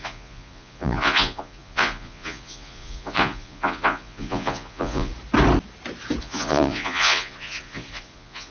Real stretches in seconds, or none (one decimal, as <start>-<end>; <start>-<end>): 5.1-6.2